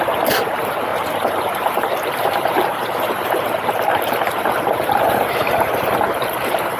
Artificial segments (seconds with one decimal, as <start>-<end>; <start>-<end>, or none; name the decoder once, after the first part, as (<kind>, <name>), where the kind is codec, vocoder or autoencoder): 0.9-4.4 (vocoder, BigVGAN v2); 5.4-6.8